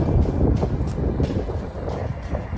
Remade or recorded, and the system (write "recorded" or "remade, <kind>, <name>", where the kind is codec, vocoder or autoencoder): recorded